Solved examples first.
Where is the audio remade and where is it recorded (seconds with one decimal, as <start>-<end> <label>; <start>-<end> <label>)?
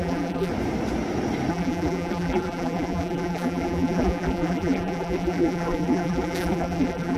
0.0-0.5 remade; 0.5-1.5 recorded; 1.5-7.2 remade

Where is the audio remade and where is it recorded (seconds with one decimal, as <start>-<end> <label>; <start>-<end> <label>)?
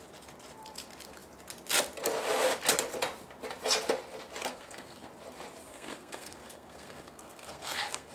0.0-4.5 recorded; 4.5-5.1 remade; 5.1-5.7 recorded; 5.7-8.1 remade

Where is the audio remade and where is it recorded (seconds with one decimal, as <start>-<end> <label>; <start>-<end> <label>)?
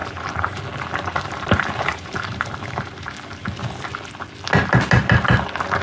0.0-0.6 remade; 0.6-1.1 recorded; 1.1-3.1 remade; 3.1-5.8 recorded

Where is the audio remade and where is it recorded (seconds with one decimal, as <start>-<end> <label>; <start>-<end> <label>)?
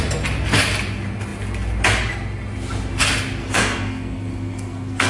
0.0-3.4 recorded; 3.4-5.1 remade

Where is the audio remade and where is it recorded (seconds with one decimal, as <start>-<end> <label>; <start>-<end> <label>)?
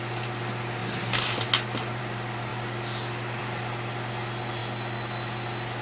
0.0-5.8 recorded